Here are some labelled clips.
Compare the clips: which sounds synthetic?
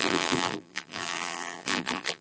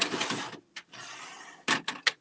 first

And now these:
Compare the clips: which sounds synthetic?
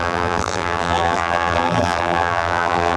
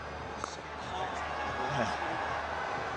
first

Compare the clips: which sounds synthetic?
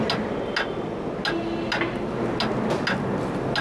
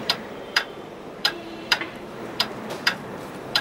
second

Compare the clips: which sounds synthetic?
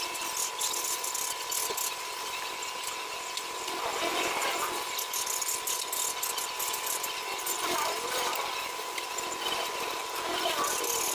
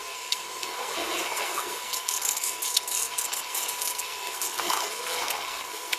second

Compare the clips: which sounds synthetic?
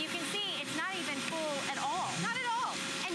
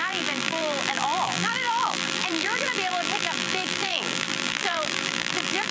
second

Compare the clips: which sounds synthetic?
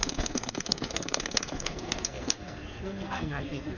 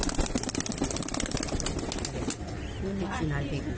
first